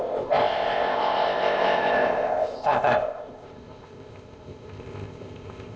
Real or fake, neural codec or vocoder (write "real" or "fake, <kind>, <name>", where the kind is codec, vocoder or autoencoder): fake, codec, ZipCodec